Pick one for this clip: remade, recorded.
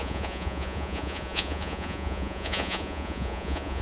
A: remade